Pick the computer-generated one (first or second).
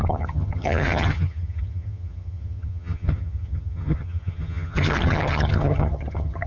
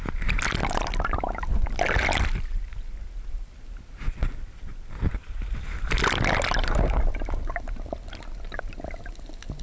first